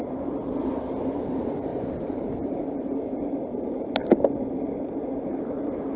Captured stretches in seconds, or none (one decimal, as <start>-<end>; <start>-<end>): 0.0-1.7; 4.0-6.0